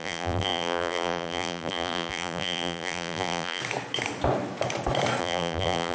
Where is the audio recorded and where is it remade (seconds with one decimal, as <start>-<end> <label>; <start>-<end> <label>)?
0.0-3.6 remade; 3.6-5.2 recorded; 5.2-5.9 remade